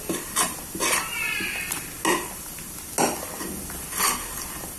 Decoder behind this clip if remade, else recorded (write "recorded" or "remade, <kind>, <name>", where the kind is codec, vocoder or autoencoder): recorded